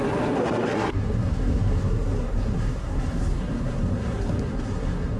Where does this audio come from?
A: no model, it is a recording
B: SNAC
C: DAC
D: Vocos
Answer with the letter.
B